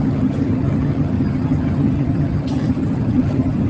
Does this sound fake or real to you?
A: fake